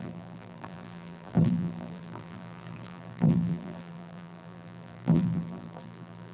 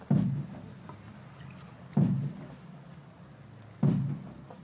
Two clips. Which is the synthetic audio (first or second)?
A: first